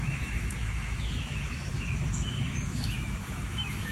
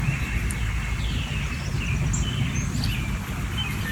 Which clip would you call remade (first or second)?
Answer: first